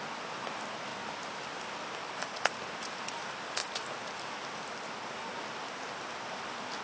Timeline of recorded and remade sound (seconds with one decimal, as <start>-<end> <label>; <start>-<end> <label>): 0.0-6.8 recorded